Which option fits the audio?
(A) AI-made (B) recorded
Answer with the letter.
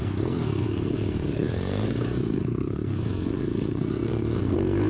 A